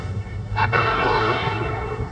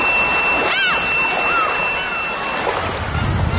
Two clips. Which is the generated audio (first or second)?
first